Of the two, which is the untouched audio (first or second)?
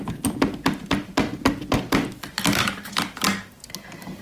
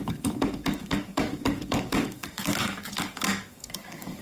first